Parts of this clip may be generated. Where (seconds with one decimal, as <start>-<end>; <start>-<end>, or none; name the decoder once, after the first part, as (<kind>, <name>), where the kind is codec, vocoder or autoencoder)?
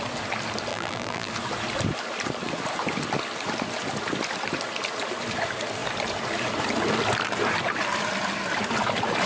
0.7-1.3 (vocoder, BigVGAN v2)